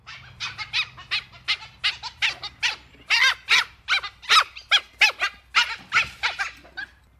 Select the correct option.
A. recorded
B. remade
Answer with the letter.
A